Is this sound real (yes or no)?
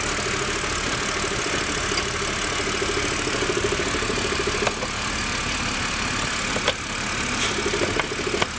yes